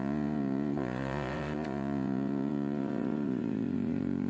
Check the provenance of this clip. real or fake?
fake